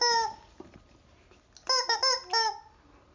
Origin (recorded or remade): recorded